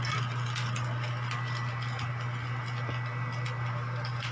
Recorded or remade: recorded